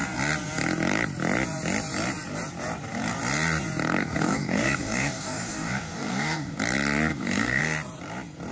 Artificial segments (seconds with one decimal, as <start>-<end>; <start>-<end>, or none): 4.0-6.6; 7.1-7.6